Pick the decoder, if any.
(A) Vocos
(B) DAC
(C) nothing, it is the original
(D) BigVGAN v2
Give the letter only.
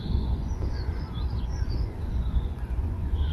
A